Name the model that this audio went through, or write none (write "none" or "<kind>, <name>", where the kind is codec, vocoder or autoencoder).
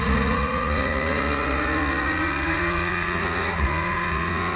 vocoder, Vocos